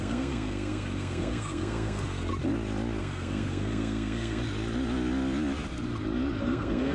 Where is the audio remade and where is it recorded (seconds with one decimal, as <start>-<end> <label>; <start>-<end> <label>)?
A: 0.0-2.3 remade; 2.3-3.0 recorded; 3.0-4.4 remade; 4.4-6.4 recorded; 6.4-6.9 remade